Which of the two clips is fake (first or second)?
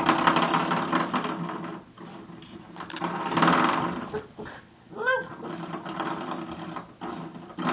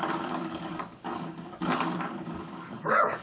second